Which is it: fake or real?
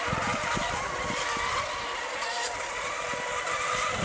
real